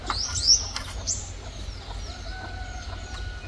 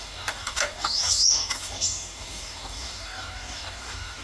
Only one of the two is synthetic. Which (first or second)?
second